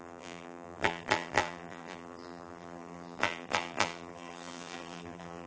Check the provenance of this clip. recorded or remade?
remade